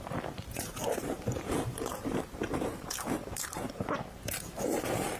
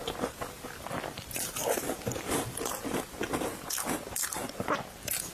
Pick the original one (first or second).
second